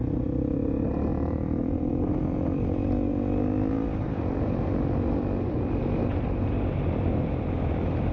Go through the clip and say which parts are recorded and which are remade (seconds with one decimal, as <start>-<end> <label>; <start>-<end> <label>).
0.0-1.1 recorded; 1.1-1.9 remade; 1.9-8.1 recorded